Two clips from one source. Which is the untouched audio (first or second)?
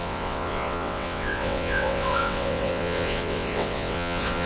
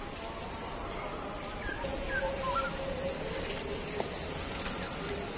second